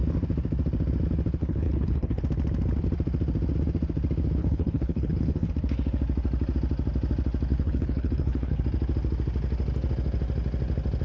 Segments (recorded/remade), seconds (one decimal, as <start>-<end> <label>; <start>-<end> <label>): 0.0-1.4 recorded; 1.4-2.2 remade; 2.2-4.4 recorded; 4.4-5.5 remade; 5.5-7.5 recorded; 7.5-8.6 remade; 8.6-11.0 recorded